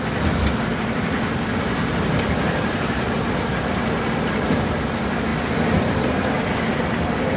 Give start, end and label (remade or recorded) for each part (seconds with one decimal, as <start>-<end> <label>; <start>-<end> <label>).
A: 0.0-7.4 recorded